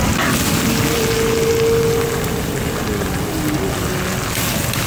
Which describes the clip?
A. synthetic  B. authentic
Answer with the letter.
B